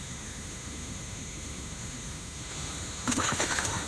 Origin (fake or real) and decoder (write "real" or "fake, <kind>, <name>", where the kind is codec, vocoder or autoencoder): fake, autoencoder, DAC-VAE